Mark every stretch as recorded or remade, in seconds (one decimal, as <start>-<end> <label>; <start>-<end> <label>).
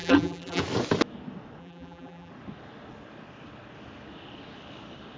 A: 0.0-0.6 remade; 0.6-1.6 recorded; 1.6-2.3 remade; 2.3-5.2 recorded